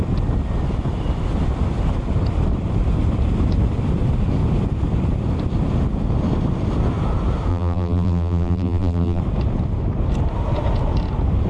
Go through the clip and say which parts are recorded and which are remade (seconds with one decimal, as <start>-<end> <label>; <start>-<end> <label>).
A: 0.0-7.5 recorded; 7.5-9.2 remade; 9.2-11.5 recorded